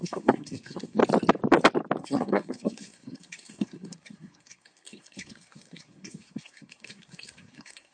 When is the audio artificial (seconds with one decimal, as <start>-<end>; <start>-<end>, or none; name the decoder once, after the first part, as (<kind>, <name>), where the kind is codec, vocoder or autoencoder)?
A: 0.0-1.0 (codec, SNAC); 2.0-7.9